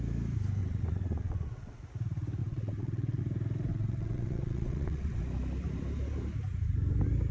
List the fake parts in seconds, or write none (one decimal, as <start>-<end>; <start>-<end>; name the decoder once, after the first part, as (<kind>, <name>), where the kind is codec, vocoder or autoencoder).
0.6-1.8 (vocoder, WaveNeXt); 2.4-3.2; 3.7-5.2